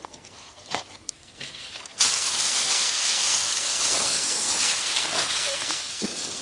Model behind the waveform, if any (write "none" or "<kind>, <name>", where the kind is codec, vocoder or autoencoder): codec, SNAC